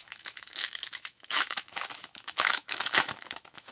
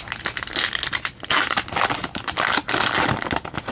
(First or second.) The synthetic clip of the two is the first